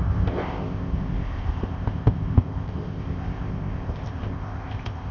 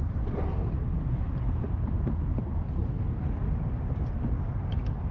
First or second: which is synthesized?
first